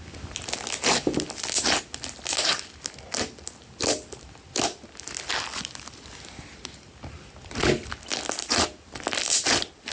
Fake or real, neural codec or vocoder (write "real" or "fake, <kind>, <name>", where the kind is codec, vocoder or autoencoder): real